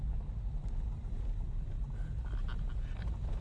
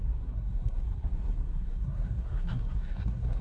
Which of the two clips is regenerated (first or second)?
second